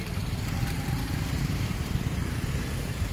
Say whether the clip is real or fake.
fake